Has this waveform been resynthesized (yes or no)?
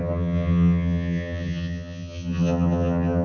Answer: yes